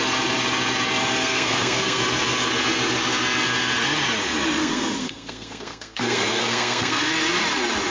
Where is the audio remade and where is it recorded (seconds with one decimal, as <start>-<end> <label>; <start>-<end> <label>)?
0.0-1.2 recorded; 1.2-2.0 remade; 2.0-4.6 recorded; 4.6-7.1 remade; 7.1-7.9 recorded